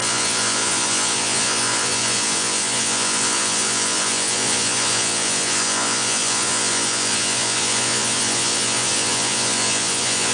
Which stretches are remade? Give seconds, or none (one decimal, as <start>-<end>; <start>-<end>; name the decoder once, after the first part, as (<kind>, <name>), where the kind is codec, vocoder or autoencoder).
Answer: 0.0-10.3 (vocoder, Vocos)